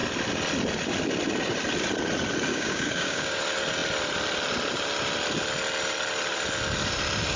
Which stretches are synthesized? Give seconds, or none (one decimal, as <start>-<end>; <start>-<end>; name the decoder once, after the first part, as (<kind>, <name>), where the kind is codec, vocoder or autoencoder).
2.5-3.4 (codec, DAC)